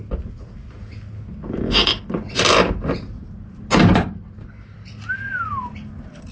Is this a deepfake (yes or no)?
no